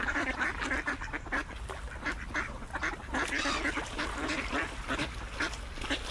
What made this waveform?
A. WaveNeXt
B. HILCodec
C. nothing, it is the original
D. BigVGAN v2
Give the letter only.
C